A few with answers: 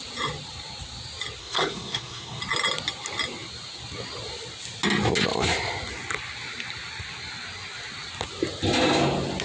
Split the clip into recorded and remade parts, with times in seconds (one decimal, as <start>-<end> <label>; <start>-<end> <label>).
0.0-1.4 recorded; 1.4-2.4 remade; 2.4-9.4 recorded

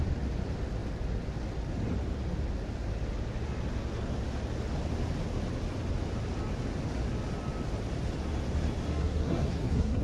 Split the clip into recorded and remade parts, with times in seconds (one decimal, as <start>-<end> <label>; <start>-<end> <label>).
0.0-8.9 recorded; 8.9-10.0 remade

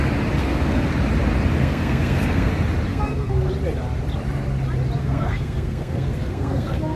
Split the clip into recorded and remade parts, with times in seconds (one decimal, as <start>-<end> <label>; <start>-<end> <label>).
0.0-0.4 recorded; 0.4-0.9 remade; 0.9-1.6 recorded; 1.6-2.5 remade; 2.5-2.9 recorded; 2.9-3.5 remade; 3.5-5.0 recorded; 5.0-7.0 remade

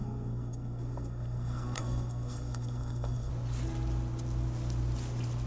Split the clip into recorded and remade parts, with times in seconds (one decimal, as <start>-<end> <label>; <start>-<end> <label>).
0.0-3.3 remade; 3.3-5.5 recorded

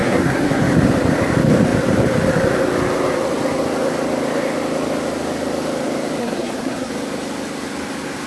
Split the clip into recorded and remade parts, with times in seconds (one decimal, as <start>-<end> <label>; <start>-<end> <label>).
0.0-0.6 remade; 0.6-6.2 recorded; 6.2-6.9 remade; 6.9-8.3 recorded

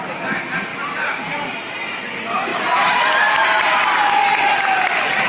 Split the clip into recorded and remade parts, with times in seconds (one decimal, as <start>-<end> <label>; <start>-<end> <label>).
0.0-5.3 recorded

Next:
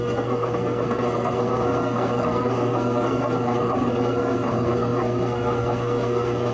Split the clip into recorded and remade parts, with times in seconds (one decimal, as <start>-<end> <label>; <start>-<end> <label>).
0.0-6.5 remade